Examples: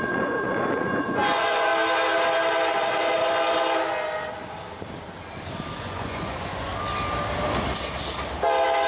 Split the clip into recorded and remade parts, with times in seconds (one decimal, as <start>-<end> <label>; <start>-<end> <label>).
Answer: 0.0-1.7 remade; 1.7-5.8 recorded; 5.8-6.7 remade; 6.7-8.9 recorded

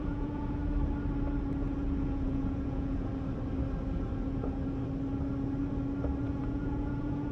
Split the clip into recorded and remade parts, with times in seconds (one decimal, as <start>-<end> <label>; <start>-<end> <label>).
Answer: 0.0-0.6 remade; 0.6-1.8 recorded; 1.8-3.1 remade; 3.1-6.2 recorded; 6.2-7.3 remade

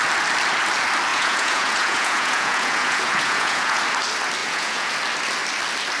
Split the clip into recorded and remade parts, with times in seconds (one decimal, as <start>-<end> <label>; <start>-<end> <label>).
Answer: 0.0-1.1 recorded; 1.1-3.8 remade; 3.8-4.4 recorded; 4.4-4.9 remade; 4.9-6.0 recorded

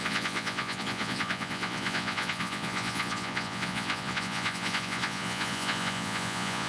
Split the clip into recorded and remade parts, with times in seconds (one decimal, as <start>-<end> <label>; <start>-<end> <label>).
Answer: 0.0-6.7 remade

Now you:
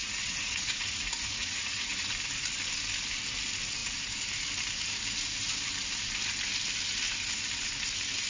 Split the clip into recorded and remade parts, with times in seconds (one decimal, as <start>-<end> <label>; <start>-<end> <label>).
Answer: 0.0-2.1 remade; 2.1-8.3 recorded

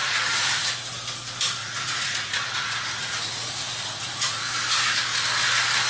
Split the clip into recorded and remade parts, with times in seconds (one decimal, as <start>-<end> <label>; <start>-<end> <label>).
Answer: 0.0-0.7 remade; 0.7-1.6 recorded; 1.6-4.4 remade; 4.4-5.9 recorded

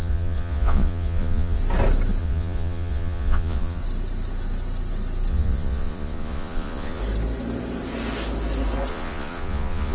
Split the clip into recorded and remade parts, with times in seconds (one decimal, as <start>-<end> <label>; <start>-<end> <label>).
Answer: 0.0-1.6 remade; 1.6-2.2 recorded; 2.2-3.8 remade; 3.8-5.3 recorded; 5.3-7.0 remade; 7.0-8.9 recorded; 8.9-9.9 remade

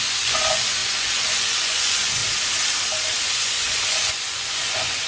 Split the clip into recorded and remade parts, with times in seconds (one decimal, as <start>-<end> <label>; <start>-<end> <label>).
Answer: 0.0-2.2 remade; 2.2-3.2 recorded; 3.2-5.1 remade